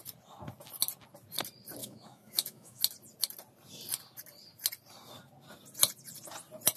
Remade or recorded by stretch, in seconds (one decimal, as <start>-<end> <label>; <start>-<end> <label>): 0.0-1.8 recorded; 1.8-2.8 remade; 2.8-6.8 recorded